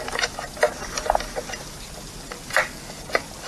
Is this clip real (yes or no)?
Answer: yes